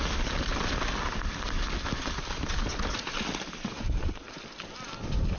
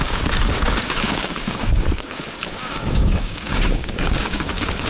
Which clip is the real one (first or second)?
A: first